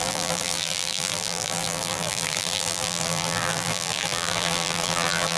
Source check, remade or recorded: remade